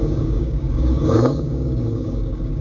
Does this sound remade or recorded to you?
remade